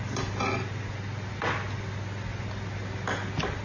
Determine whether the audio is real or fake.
real